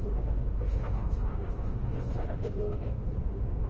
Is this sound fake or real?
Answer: fake